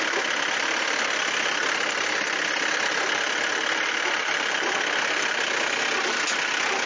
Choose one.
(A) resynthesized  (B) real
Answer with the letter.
B